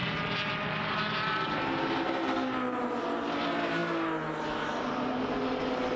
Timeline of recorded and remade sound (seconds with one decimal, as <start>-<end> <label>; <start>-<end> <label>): 0.0-6.0 recorded